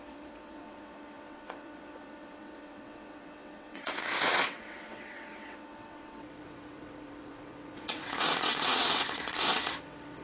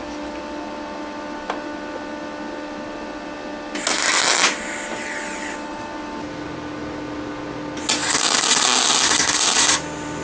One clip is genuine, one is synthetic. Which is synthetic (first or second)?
first